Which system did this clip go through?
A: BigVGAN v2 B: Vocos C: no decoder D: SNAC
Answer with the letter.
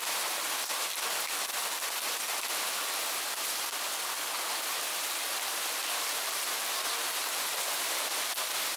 C